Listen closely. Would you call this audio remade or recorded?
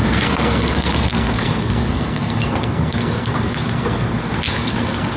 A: remade